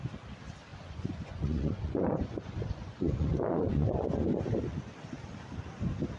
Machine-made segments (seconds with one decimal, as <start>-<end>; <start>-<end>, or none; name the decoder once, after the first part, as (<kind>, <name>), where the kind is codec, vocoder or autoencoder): 0.7-4.4 (vocoder, Vocos)